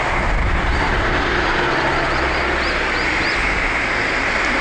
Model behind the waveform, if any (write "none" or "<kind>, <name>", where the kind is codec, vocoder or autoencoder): none